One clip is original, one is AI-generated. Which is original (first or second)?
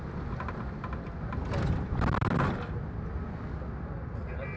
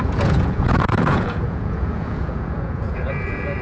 first